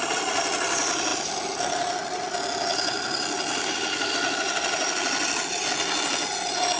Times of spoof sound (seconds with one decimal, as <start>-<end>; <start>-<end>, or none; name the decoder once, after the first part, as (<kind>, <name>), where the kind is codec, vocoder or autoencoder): none